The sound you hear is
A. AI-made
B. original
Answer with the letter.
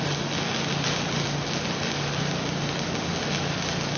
B